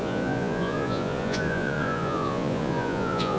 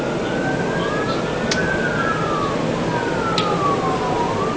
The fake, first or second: first